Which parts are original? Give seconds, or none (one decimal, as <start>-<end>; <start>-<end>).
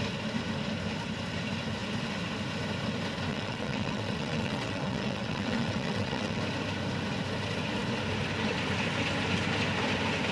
0.0-3.3; 6.4-10.3